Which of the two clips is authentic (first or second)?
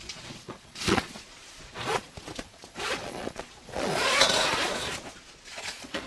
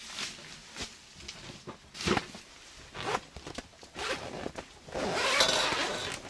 second